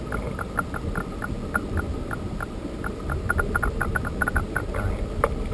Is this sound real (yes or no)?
yes